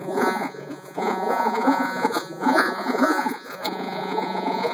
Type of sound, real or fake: fake